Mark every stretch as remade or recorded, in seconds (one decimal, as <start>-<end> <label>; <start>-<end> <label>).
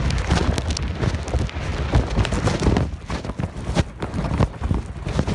0.0-5.3 recorded